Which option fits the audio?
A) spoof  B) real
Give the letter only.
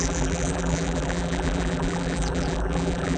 A